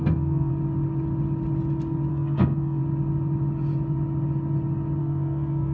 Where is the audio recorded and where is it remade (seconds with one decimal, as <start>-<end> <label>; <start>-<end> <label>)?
0.0-0.5 remade; 0.5-2.1 recorded; 2.1-2.8 remade; 2.8-5.0 recorded; 5.0-5.7 remade